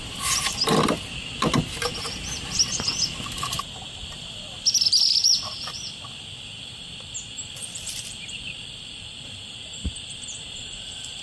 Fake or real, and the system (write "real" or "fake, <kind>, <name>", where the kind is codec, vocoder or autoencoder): fake, vocoder, BigVGAN v2